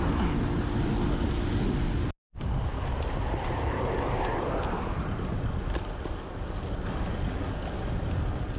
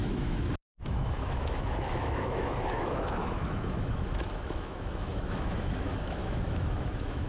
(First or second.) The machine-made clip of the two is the second